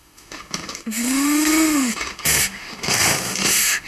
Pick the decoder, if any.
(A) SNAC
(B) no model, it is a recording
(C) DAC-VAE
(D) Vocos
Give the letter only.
C